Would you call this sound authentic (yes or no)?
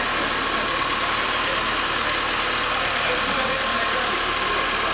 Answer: yes